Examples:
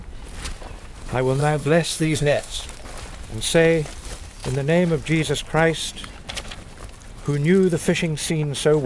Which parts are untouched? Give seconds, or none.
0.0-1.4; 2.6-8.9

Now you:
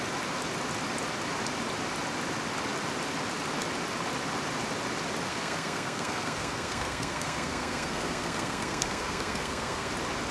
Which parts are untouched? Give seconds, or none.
0.0-5.3; 9.9-10.3